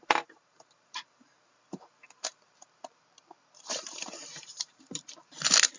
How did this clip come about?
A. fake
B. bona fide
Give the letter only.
A